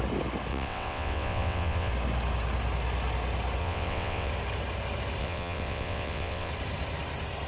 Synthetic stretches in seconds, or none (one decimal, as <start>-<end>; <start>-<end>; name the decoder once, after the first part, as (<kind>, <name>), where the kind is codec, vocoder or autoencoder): 0.5-1.9 (vocoder, WaveNeXt); 3.6-4.3; 5.2-6.5